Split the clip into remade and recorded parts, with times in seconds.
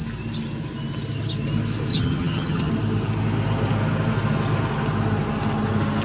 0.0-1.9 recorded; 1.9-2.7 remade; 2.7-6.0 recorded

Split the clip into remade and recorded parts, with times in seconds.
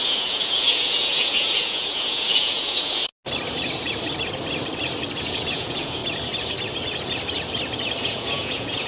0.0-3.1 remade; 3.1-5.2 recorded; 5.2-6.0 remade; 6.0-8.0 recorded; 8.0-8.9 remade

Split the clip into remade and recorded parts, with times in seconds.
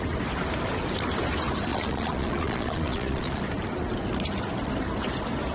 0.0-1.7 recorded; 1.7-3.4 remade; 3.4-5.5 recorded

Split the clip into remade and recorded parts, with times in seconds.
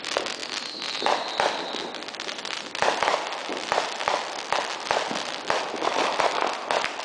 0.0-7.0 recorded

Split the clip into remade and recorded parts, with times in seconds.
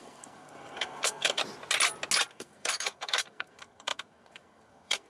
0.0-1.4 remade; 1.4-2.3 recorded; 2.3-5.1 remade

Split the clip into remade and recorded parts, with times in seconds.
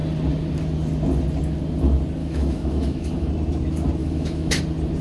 0.0-2.2 recorded; 2.2-3.3 remade; 3.3-4.0 recorded; 4.0-4.6 remade; 4.6-5.0 recorded